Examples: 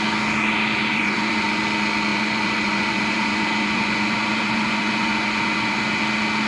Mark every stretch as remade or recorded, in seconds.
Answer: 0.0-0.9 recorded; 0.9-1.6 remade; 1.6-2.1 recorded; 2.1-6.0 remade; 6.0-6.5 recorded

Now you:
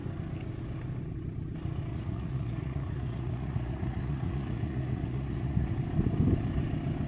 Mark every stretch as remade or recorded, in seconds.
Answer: 0.0-1.9 recorded; 1.9-5.7 remade; 5.7-7.1 recorded